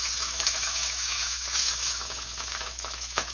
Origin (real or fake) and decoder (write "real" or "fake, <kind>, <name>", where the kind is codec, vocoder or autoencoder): fake, autoencoder, DAC-VAE